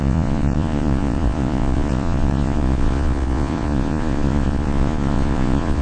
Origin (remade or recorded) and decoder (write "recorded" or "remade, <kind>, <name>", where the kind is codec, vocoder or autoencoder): remade, vocoder, Vocos